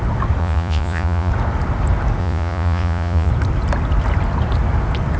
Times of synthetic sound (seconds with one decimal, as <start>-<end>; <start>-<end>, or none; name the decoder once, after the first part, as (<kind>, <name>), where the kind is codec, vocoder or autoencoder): 0.4-1.3 (vocoder, Vocos); 2.2-3.3